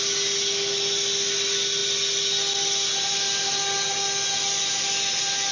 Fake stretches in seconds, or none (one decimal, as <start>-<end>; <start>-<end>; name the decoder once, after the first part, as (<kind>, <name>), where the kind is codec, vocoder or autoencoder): none